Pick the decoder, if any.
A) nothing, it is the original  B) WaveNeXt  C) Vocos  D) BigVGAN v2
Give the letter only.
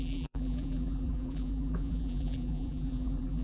D